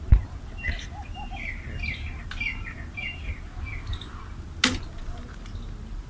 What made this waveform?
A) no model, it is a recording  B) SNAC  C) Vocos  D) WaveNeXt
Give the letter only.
A